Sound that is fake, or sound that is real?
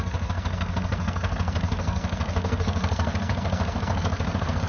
fake